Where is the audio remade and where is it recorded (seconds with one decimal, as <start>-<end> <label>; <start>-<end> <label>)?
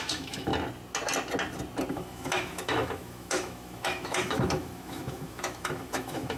0.0-0.5 remade; 0.5-1.9 recorded; 1.9-6.4 remade